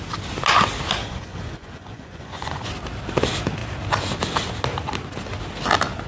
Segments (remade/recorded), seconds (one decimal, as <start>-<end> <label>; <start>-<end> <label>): 0.0-1.0 recorded; 1.0-2.7 remade; 2.7-6.1 recorded

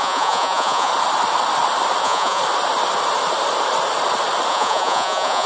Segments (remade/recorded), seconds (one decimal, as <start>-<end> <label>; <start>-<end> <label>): 0.0-0.9 remade; 0.9-2.0 recorded; 2.0-2.4 remade; 2.4-4.5 recorded; 4.5-5.5 remade

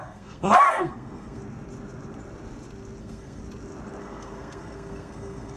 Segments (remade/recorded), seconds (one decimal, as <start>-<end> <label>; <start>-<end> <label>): 0.0-1.4 remade; 1.4-3.0 recorded; 3.0-3.4 remade; 3.4-4.0 recorded; 4.0-5.6 remade

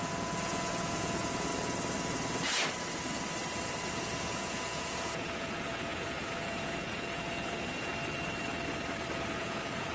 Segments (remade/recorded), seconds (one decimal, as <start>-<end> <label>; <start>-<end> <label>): 0.0-1.5 remade; 1.5-4.0 recorded; 4.0-7.9 remade; 7.9-9.3 recorded; 9.3-9.9 remade

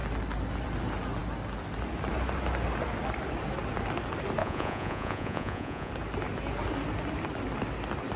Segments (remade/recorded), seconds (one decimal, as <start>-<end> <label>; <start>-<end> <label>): 0.0-4.4 recorded; 4.4-5.9 remade; 5.9-8.2 recorded

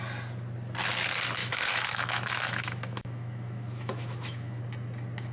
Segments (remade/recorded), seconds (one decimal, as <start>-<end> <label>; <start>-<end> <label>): 0.0-1.4 recorded; 1.4-4.6 remade; 4.6-5.3 recorded